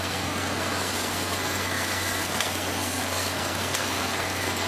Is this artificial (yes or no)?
yes